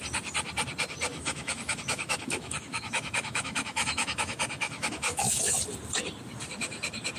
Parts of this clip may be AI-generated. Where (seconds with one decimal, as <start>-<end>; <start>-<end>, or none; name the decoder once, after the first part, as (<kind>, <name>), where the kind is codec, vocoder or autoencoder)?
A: 1.1-5.4 (autoencoder, DAC-VAE)